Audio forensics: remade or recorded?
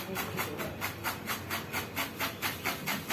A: recorded